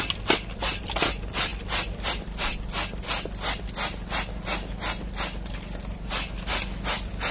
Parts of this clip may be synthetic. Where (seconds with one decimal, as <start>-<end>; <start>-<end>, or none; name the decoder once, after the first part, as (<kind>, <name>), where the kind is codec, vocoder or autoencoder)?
none